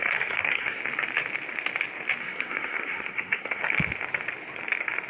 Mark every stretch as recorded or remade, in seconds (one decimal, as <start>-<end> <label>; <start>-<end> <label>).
0.0-0.8 remade; 0.8-2.2 recorded; 2.2-3.6 remade; 3.6-5.1 recorded